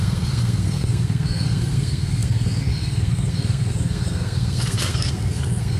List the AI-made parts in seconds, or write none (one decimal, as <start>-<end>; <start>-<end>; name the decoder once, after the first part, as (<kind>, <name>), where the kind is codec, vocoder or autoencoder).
0.0-5.8 (codec, SNAC)